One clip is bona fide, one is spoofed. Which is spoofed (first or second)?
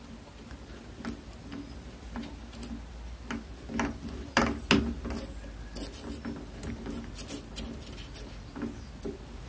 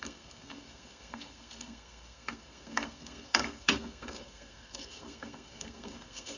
second